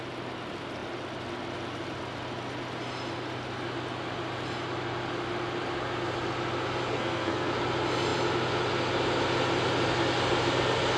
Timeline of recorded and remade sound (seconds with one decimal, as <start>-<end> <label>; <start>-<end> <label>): 0.0-6.9 recorded; 6.9-7.5 remade; 7.5-11.0 recorded